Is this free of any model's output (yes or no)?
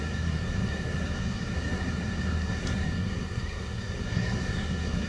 no